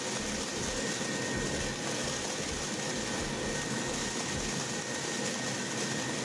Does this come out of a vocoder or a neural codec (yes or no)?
no